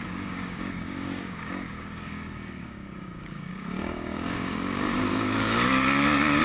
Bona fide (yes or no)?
no